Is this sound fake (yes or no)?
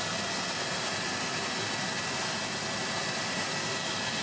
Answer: no